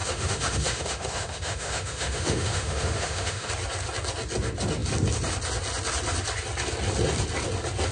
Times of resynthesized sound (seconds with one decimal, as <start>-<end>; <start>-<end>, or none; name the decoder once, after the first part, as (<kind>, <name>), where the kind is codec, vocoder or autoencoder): 0.0-3.5 (autoencoder, DAC-VAE)

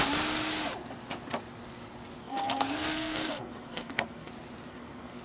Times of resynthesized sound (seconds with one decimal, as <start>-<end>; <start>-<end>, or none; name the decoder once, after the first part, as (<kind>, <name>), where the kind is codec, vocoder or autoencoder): 2.2-4.3 (codec, SNAC); 4.7-5.2

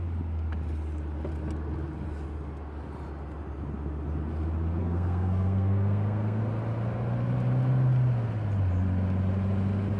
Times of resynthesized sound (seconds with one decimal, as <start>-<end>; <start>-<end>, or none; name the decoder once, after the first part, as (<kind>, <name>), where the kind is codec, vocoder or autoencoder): 4.8-6.4 (codec, SNAC)

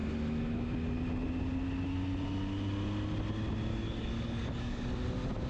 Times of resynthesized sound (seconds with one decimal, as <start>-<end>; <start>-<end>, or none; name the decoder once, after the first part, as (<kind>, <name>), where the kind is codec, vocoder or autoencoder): 3.7-4.8 (codec, DAC)

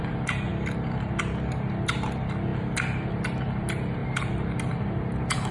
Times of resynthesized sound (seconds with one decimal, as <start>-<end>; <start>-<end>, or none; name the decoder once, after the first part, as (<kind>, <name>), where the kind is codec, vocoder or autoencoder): none

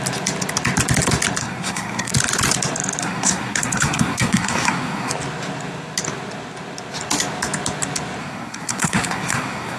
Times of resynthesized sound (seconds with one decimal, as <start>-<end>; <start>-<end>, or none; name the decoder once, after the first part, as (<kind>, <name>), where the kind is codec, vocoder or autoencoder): 1.4-2.1 (codec, SNAC); 3.0-5.1; 8.2-9.8